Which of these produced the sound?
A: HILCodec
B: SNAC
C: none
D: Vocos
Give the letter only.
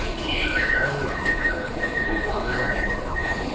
A